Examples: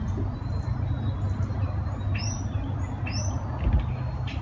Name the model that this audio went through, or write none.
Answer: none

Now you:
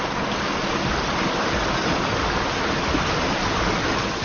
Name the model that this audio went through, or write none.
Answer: none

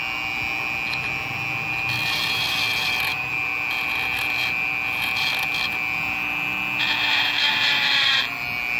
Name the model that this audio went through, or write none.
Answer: none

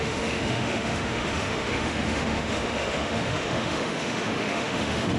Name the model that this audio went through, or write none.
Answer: autoencoder, DAC-VAE